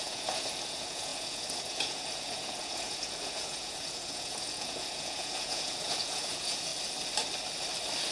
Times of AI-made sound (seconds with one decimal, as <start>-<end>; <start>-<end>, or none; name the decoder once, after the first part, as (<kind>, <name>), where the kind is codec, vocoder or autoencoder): 0.0-6.7 (vocoder, Vocos)